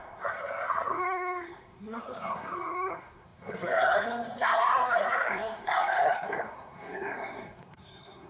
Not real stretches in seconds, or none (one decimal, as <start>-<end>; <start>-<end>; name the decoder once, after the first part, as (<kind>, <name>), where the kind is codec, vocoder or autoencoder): 0.0-8.3 (codec, SNAC)